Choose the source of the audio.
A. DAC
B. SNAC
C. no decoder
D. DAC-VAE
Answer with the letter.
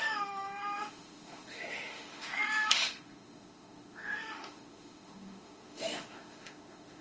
D